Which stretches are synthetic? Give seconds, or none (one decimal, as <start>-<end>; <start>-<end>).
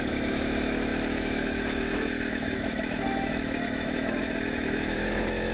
0.0-5.5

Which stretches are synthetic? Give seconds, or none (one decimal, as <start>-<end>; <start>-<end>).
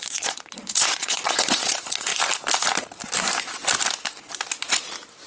0.0-2.1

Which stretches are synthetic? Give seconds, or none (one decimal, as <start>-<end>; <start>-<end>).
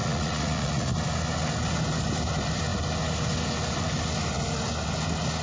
0.0-0.9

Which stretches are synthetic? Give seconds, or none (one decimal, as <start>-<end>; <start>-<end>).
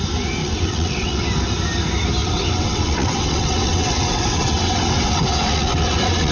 0.4-1.2; 2.2-6.3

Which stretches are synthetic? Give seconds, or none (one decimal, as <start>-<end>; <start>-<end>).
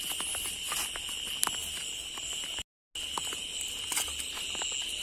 none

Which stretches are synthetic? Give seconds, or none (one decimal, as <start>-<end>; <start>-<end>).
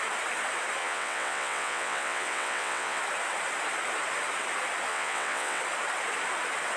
0.8-3.0; 4.9-5.6